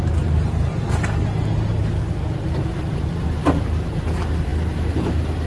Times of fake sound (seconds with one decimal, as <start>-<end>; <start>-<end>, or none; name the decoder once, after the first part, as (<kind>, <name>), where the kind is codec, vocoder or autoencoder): none